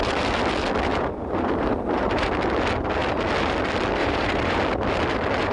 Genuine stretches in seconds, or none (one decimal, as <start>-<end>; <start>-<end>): 0.0-0.9; 2.3-4.0; 4.6-5.5